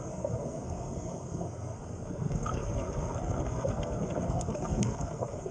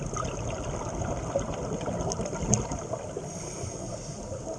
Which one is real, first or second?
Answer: second